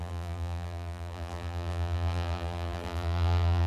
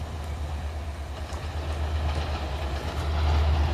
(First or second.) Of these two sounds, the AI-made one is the first